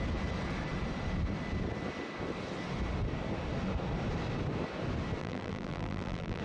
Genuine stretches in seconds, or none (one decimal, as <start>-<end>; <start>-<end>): 0.0-5.2